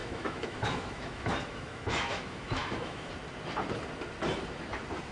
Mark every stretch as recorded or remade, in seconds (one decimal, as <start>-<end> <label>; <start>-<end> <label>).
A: 0.0-3.1 remade; 3.1-5.1 recorded